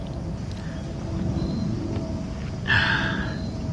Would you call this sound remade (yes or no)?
no